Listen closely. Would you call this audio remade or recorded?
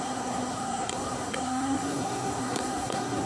remade